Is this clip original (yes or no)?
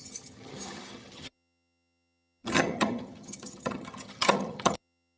no